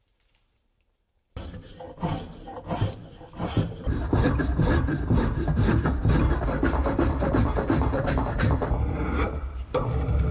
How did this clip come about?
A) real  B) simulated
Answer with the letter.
B